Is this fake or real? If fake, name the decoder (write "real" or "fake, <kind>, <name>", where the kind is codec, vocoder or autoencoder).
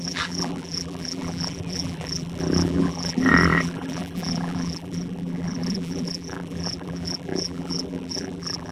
fake, vocoder, BigVGAN v2